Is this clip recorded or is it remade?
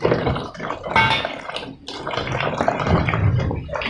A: recorded